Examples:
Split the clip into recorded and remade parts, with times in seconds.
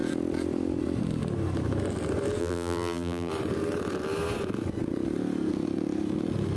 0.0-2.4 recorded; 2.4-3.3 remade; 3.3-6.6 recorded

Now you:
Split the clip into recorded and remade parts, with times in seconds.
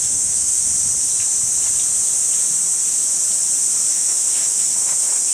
0.0-0.7 remade; 0.7-3.9 recorded; 3.9-5.3 remade